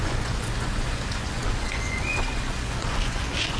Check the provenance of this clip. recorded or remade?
remade